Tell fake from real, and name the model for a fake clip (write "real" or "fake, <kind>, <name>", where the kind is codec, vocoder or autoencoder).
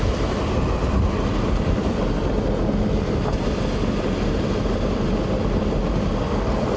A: real